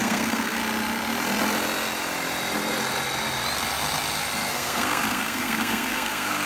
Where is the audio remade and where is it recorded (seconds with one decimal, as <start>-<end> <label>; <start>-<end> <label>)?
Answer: 0.0-0.6 remade; 0.6-4.5 recorded; 4.5-6.5 remade